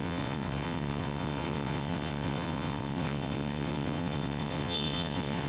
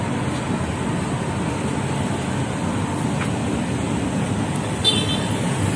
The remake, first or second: first